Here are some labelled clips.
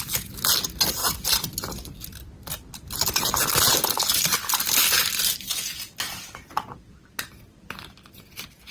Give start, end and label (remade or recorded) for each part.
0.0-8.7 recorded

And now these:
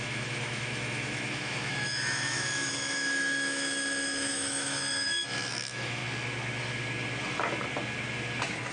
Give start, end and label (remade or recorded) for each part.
0.0-6.0 remade; 6.0-8.7 recorded

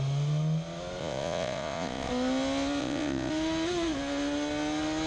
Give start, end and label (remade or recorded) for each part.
0.0-1.0 recorded; 1.0-2.1 remade; 2.1-2.8 recorded; 2.8-3.3 remade; 3.3-5.1 recorded

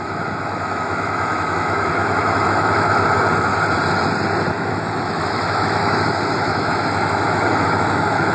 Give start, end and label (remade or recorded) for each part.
0.0-3.5 remade; 3.5-4.5 recorded; 4.5-8.3 remade

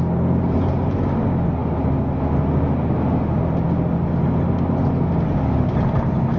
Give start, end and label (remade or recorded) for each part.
0.0-6.4 recorded

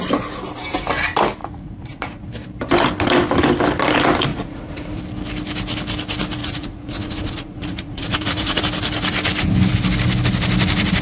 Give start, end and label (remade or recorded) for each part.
0.0-1.4 recorded; 1.4-2.3 remade; 2.3-4.3 recorded; 4.3-5.0 remade; 5.0-6.4 recorded; 6.4-8.6 remade; 8.6-11.0 recorded